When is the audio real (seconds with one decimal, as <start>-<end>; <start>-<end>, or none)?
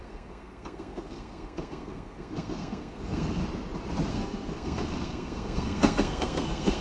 3.4-4.1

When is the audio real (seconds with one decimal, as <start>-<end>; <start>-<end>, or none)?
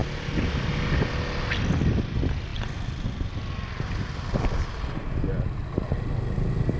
0.0-6.8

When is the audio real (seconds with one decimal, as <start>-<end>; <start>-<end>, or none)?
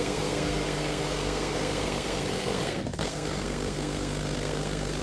none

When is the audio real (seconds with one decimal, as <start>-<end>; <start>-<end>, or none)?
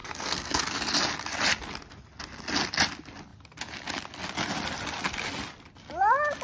0.6-6.4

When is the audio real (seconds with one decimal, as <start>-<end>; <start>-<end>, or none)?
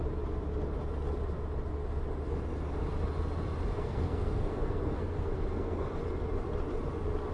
0.0-3.7; 6.0-7.3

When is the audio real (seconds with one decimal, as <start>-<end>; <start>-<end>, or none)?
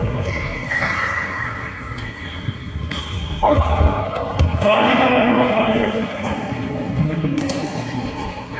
none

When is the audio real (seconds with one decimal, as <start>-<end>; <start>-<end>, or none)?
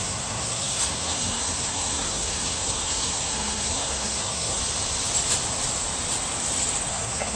4.6-6.9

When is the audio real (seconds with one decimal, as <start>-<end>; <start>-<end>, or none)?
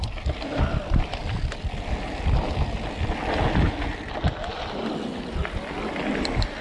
0.0-6.6